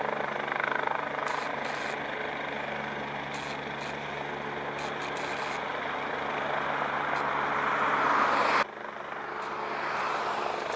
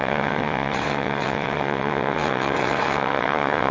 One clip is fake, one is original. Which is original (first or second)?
first